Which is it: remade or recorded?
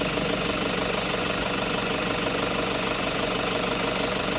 remade